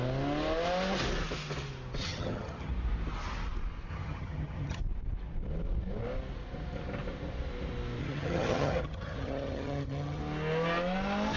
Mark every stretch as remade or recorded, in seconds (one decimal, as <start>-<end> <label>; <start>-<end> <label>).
0.0-2.0 recorded; 2.0-2.7 remade; 2.7-3.9 recorded; 3.9-4.8 remade; 4.8-8.0 recorded; 8.0-10.2 remade; 10.2-11.4 recorded